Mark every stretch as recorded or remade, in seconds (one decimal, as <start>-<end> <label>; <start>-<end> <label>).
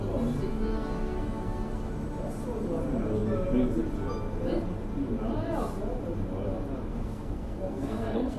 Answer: 0.0-0.5 recorded; 0.5-1.9 remade; 1.9-6.9 recorded; 6.9-8.4 remade